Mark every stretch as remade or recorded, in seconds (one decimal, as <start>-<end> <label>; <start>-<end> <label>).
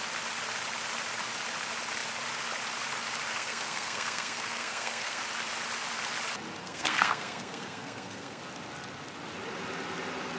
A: 0.0-3.3 recorded; 3.3-5.2 remade; 5.2-6.6 recorded; 6.6-8.4 remade; 8.4-10.4 recorded